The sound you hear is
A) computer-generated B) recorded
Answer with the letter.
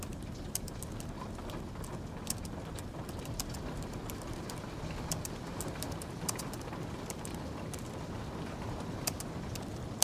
A